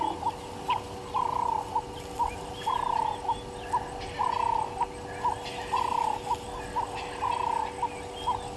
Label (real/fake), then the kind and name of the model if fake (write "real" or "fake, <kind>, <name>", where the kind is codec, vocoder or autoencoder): real